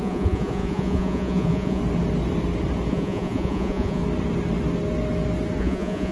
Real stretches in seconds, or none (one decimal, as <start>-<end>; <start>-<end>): 1.8-2.9; 4.0-5.6